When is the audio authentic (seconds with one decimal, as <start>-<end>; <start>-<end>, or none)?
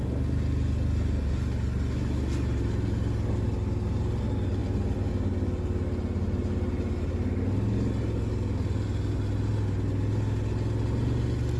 0.0-11.6